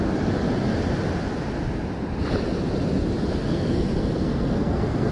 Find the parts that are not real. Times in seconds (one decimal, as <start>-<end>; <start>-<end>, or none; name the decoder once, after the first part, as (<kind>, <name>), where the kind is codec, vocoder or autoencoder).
3.4-5.1 (codec, SNAC)